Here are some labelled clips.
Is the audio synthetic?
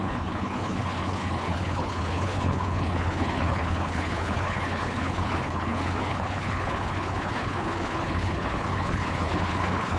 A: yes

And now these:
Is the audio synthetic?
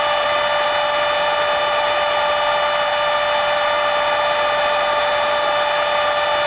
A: no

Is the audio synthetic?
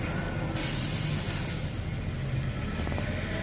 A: no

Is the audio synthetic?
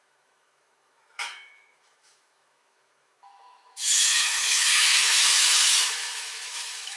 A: yes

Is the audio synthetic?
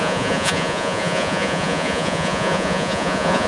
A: yes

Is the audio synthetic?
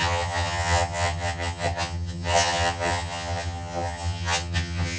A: yes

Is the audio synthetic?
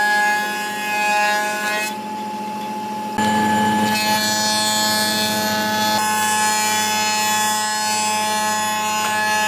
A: no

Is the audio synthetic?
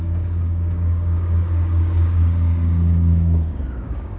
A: yes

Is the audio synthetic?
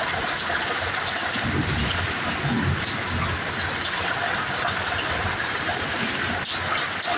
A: no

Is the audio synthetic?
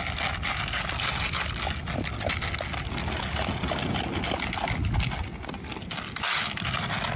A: no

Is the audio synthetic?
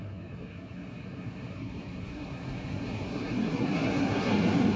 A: yes